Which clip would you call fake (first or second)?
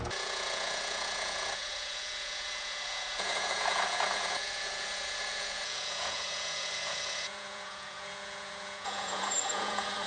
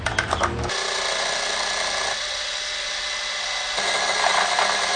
first